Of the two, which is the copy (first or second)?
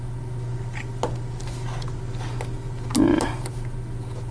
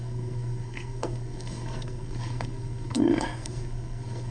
second